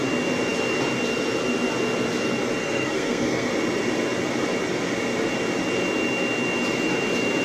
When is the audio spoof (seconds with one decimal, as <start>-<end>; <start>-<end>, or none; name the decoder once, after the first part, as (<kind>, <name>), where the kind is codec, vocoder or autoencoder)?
2.6-3.5 (codec, SNAC)